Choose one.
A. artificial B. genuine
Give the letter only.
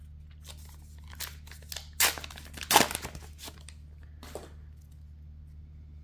B